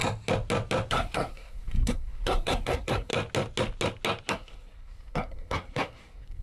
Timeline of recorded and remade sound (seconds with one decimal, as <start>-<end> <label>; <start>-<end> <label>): 0.0-0.9 recorded; 0.9-3.1 remade; 3.1-4.3 recorded; 4.3-6.4 remade